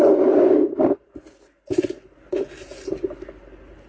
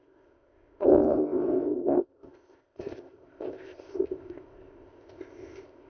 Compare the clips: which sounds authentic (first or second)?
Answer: first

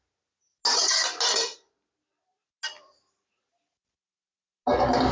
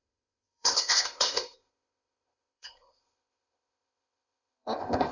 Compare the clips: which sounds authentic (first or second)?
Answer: first